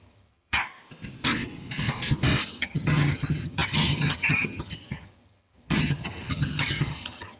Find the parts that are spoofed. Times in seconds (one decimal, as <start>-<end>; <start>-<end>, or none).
0.0-0.6; 2.6-7.4